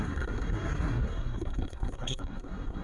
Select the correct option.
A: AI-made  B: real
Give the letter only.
A